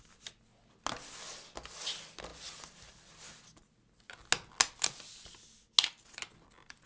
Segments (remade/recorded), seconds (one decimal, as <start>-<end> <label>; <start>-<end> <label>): 0.0-6.9 recorded